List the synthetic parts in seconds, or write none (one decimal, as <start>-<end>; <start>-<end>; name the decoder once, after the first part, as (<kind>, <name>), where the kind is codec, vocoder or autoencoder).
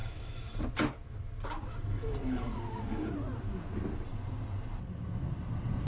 0.0-0.6 (autoencoder, DAC-VAE); 1.7-3.1